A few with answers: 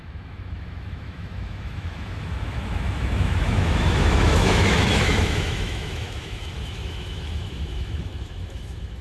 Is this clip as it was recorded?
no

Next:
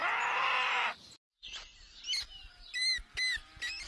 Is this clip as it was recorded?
yes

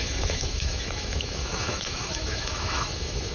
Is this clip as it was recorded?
no